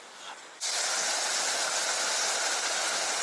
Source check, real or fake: fake